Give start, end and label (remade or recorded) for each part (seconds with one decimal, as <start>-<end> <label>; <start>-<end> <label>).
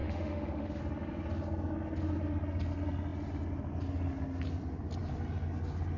0.0-0.8 remade; 0.8-6.0 recorded